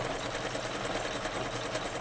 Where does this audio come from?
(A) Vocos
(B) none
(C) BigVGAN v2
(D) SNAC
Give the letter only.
B